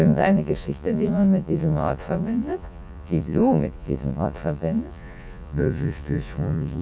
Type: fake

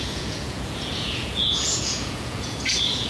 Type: fake